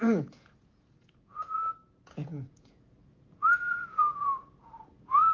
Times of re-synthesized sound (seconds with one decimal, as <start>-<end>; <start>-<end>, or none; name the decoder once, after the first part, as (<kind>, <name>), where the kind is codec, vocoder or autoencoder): 0.0-5.3 (vocoder, Vocos)